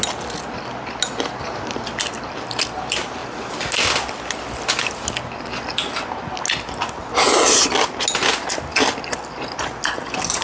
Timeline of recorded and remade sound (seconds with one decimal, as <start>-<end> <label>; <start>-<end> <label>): 0.0-10.4 recorded